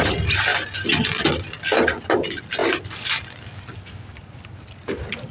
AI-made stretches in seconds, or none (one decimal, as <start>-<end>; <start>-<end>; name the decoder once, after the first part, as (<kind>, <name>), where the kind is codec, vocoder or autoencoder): none